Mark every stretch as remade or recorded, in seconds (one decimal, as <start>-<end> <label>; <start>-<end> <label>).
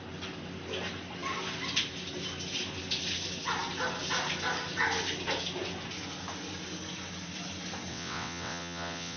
0.0-7.9 recorded; 7.9-9.2 remade